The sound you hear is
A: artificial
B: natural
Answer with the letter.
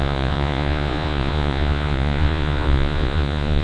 A